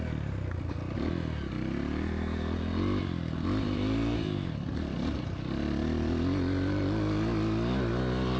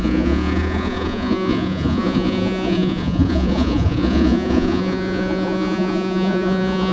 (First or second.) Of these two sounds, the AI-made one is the second